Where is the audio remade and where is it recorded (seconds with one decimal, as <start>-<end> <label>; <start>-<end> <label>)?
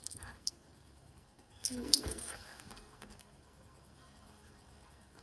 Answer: 0.0-5.2 remade